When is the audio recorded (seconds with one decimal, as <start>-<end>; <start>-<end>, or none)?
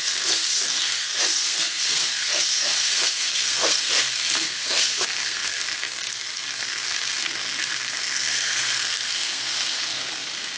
none